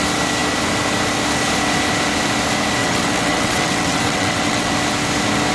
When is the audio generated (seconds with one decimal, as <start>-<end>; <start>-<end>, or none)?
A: 2.8-4.7